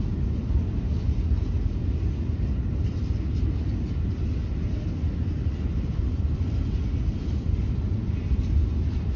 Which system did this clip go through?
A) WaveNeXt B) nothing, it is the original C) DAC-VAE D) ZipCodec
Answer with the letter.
B